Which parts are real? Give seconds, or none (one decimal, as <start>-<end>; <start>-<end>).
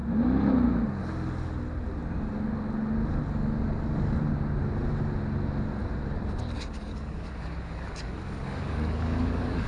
0.0-6.9